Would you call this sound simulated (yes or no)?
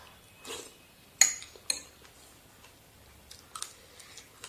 no